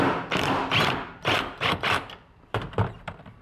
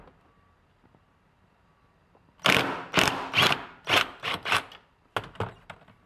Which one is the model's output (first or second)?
first